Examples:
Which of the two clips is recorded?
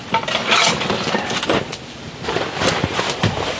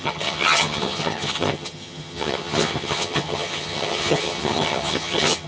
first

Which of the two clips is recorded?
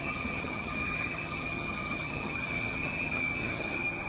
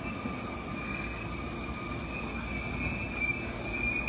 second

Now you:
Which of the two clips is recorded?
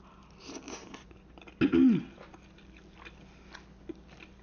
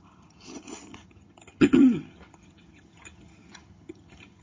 first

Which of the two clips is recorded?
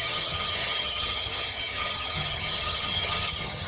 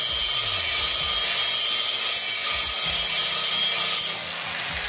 second